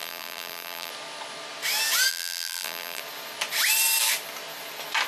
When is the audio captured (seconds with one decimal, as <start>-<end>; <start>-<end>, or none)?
0.9-2.1; 3.0-5.1